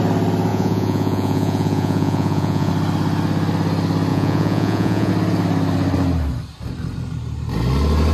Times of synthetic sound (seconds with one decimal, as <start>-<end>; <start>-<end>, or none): 0.5-2.7; 4.1-5.1